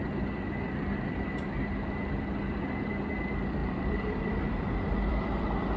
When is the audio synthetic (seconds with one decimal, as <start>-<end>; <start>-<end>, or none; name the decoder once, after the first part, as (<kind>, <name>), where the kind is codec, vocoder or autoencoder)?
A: 0.0-5.8 (vocoder, BigVGAN v2)